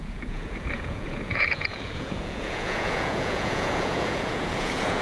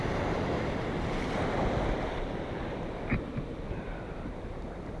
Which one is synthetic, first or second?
first